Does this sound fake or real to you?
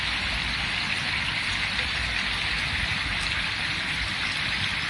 real